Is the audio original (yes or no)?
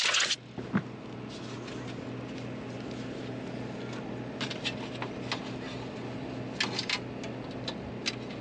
yes